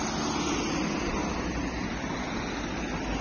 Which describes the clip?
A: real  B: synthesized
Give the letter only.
A